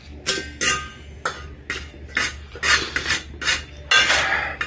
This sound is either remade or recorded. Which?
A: recorded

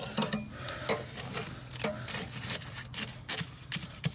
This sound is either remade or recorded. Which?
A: recorded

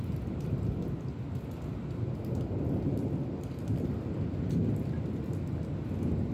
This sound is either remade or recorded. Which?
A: recorded